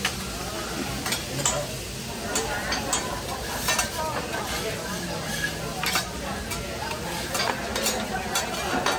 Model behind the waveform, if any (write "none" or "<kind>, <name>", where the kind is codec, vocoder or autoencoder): none